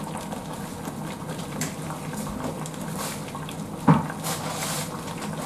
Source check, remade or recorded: recorded